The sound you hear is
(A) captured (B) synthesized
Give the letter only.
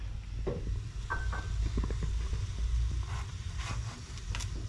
A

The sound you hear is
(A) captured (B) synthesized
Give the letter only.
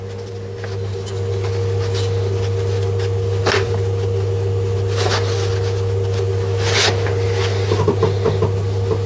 A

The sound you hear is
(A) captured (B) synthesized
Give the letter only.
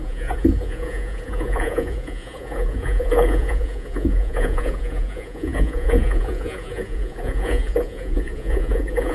B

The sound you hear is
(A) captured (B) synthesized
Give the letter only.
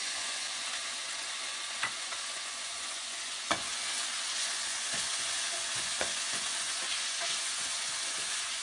B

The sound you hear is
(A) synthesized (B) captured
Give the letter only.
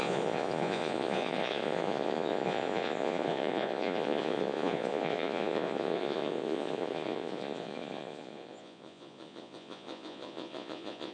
A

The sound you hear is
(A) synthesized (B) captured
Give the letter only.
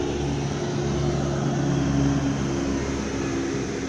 B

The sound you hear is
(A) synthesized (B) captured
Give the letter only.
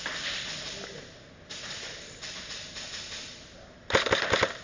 B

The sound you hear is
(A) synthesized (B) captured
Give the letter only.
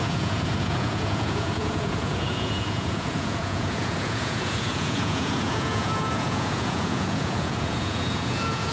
A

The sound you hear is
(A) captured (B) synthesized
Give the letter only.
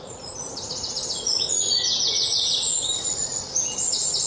B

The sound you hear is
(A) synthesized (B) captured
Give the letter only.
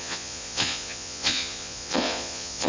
A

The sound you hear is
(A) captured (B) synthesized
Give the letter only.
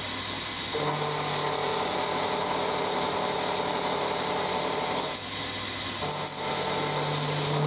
A